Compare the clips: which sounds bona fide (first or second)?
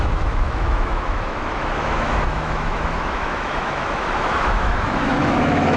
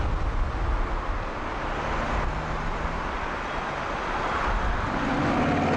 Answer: second